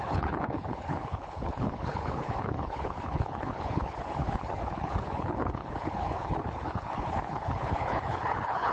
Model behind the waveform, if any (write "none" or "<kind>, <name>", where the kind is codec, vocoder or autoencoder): codec, HILCodec